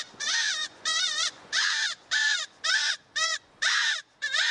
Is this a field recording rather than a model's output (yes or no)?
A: no